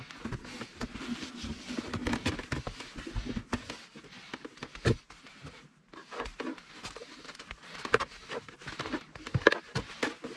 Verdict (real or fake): real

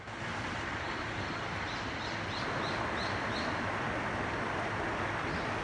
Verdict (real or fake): real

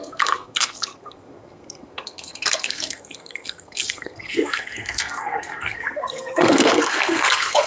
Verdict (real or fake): fake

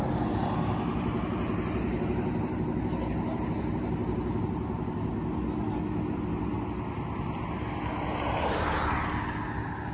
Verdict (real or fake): real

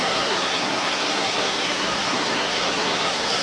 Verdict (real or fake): fake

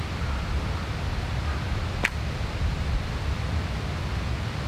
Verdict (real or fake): real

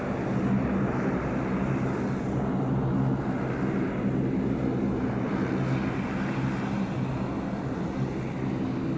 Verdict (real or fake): real